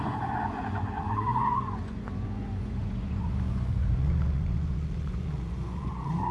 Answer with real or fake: fake